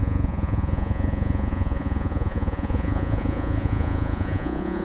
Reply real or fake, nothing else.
fake